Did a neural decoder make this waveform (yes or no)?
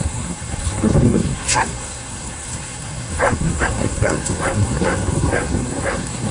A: yes